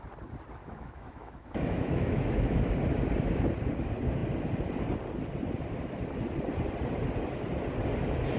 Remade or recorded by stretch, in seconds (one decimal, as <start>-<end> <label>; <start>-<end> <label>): 0.0-0.6 recorded; 0.6-2.7 remade; 2.7-8.4 recorded